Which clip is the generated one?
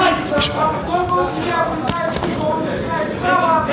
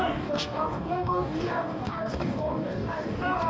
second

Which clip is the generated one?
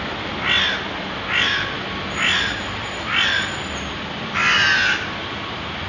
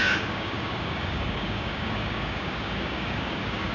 second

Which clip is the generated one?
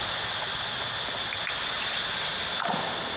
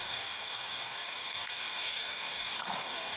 second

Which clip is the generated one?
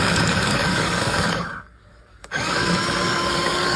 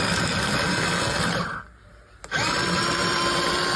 first